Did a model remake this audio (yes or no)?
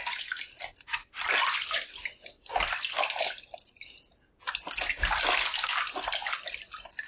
no